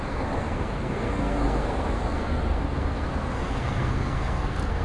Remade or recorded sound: remade